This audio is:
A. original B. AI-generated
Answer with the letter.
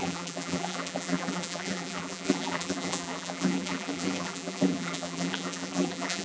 B